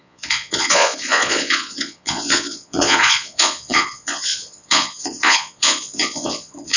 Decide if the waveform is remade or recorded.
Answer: remade